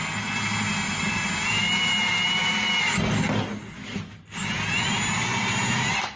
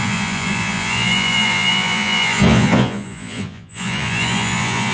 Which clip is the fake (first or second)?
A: second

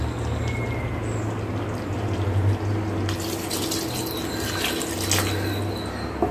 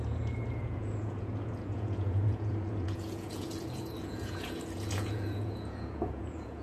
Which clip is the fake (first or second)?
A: second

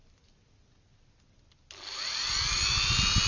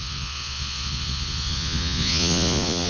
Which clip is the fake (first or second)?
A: second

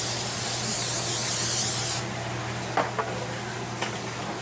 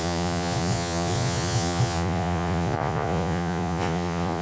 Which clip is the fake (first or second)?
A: second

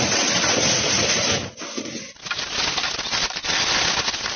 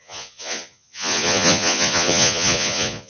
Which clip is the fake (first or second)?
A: second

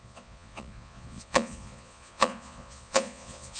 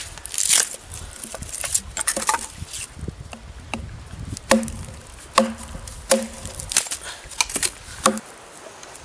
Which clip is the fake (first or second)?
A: first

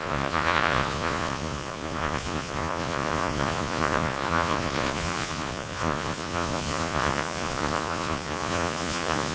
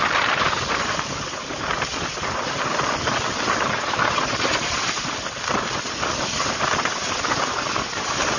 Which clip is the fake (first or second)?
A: first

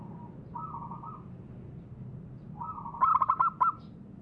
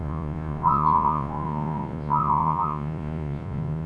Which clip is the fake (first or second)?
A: second